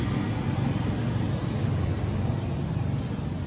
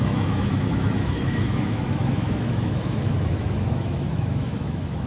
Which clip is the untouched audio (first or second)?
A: first